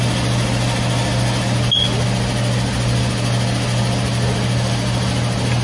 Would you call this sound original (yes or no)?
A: yes